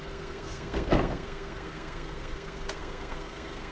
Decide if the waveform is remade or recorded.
remade